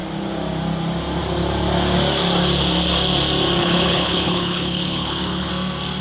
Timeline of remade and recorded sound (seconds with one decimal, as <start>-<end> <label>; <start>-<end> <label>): 0.0-3.6 recorded; 3.6-5.5 remade; 5.5-6.0 recorded